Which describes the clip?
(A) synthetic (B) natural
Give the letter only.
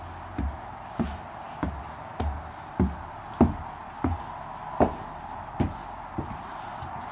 B